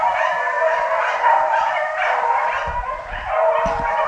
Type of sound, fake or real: real